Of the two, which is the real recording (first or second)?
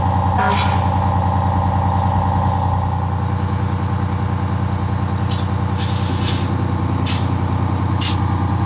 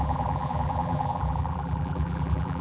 first